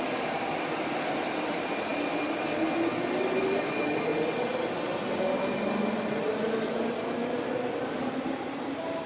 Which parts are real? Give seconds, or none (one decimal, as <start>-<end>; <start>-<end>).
1.9-3.4; 4.1-9.1